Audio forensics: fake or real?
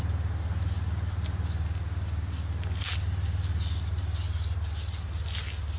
real